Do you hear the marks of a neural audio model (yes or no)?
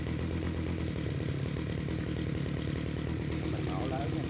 no